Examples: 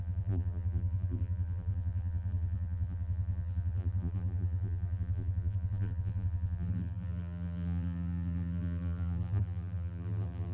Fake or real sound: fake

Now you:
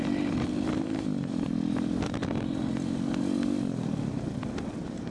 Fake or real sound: fake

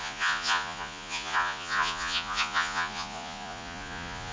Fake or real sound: fake